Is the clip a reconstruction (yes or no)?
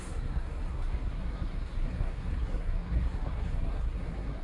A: yes